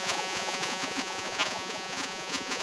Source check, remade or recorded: remade